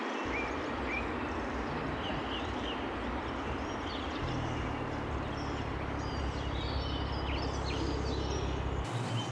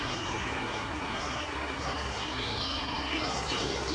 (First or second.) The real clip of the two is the first